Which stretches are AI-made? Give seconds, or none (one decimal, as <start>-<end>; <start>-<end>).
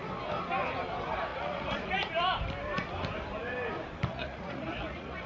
1.3-2.1; 4.1-5.3